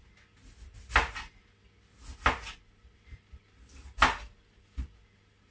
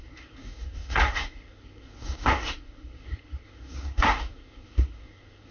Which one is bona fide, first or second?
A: first